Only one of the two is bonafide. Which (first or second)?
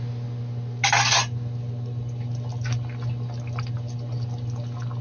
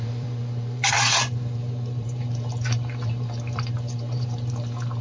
first